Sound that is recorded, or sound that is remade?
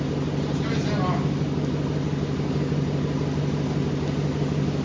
recorded